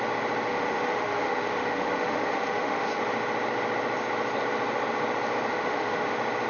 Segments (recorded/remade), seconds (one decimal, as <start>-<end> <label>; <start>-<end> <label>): 0.0-0.5 recorded; 0.5-3.0 remade; 3.0-5.5 recorded; 5.5-6.1 remade; 6.1-6.5 recorded